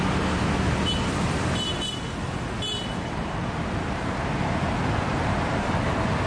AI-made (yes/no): no